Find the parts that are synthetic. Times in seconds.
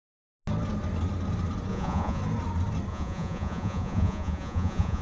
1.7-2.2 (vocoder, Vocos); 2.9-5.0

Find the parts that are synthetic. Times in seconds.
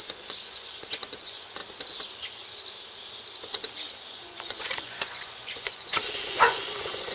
0.0-1.6 (vocoder, Vocos); 4.1-7.1